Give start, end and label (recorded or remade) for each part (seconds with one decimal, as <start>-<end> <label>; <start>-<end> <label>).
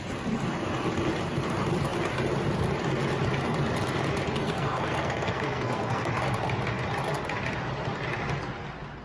0.0-4.4 recorded; 4.4-6.1 remade; 6.1-9.0 recorded